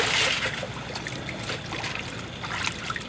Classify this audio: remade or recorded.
recorded